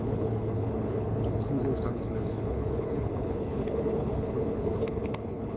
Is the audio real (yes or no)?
no